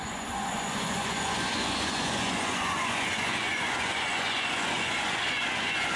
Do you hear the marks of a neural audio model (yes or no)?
yes